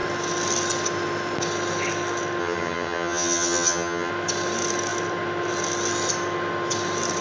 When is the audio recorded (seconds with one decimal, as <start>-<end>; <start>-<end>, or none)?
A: 0.0-2.4; 4.1-7.2